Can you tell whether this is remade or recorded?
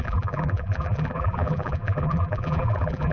remade